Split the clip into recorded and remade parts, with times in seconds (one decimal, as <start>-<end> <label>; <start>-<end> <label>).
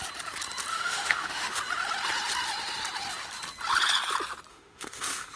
0.0-0.7 recorded; 0.7-1.6 remade; 1.6-4.5 recorded; 4.5-5.4 remade